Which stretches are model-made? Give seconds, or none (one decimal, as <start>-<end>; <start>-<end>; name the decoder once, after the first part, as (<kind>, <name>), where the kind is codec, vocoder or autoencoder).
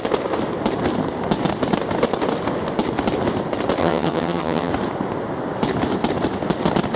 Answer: 3.8-4.7 (vocoder, HiFi-GAN)